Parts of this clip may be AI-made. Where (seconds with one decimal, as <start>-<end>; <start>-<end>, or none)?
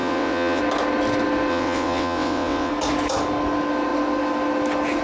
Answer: 0.0-0.6; 1.5-2.7